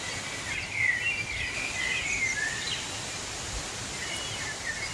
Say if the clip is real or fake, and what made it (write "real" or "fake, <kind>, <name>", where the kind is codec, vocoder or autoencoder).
real